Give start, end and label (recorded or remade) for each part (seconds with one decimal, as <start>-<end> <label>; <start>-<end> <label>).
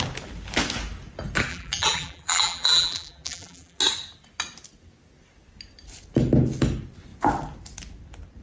0.0-1.5 recorded; 1.5-3.8 remade; 3.8-8.4 recorded